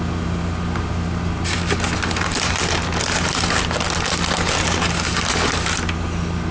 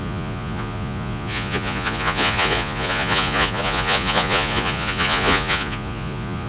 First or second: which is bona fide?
first